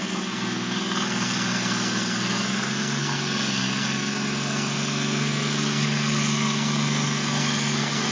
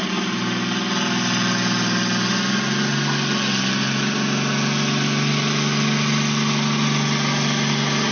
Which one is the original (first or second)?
second